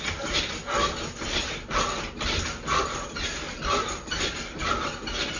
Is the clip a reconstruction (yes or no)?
no